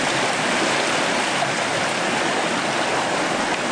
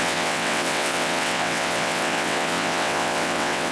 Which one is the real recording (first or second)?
first